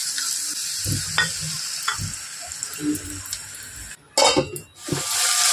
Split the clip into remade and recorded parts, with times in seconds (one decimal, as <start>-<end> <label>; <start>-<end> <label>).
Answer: 0.0-5.5 recorded